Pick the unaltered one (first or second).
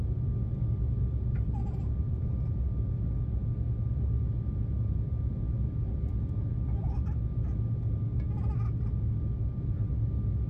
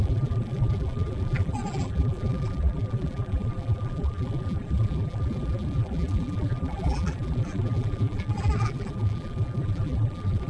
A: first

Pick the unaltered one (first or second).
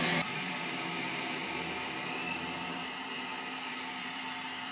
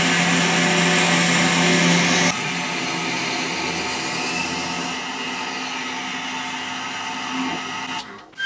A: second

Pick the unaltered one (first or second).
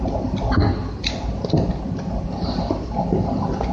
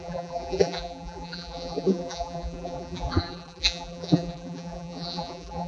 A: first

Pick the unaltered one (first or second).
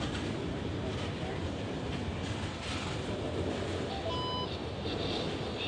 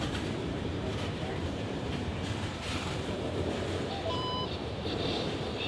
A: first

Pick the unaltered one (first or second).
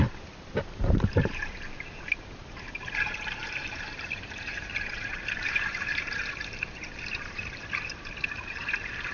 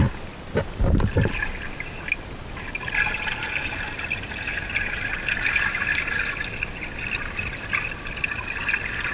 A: second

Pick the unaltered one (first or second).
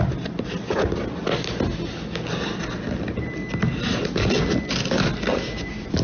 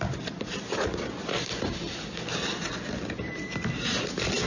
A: first